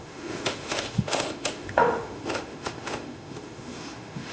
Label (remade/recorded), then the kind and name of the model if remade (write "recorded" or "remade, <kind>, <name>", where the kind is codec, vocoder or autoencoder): remade, autoencoder, DAC-VAE